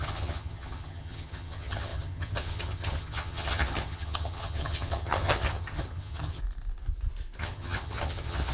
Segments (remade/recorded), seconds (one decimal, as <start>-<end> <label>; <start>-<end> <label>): 0.0-6.4 remade; 6.4-7.4 recorded; 7.4-8.5 remade